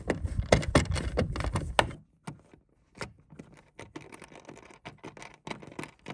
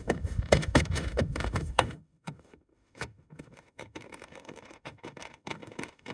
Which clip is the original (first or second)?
first